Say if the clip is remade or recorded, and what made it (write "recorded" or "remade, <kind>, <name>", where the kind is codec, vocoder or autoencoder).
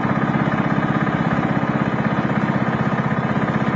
recorded